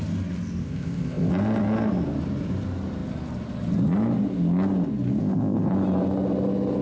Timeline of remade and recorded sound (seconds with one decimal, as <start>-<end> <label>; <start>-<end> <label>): 0.0-0.6 recorded; 0.6-1.3 remade; 1.3-5.2 recorded; 5.2-5.7 remade; 5.7-6.8 recorded